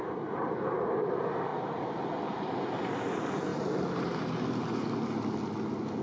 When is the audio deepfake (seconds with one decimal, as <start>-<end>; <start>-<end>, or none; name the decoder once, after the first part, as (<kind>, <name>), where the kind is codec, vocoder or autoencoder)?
none